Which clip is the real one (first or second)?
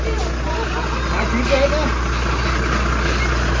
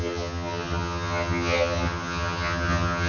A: first